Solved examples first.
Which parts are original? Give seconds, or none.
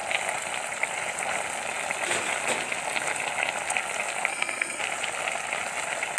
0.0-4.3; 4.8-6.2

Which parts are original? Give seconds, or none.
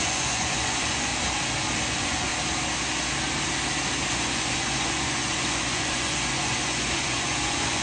1.1-1.8; 2.3-4.1